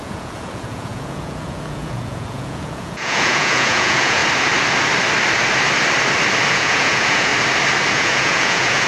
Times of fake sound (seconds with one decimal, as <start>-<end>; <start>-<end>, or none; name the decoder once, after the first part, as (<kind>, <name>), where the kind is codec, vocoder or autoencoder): 0.0-4.2 (vocoder, Vocos); 6.5-7.3; 7.9-8.9